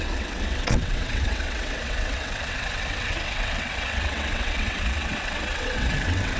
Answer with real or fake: fake